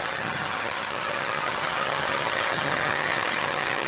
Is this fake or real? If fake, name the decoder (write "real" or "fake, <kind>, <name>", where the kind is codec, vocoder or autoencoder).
fake, vocoder, HiFi-GAN